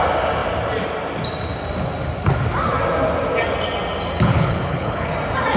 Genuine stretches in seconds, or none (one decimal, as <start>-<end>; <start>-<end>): 0.0-4.3; 5.1-5.6